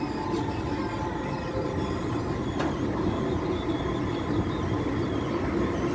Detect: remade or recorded recorded